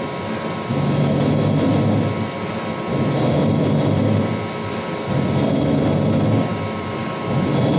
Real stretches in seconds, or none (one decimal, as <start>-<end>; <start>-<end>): 0.0-0.7; 1.2-6.5; 7.1-7.8